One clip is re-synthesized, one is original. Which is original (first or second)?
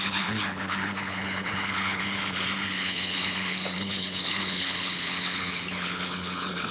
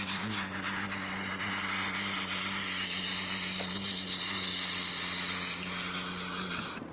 second